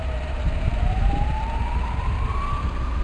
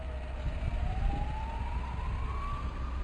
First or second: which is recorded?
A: second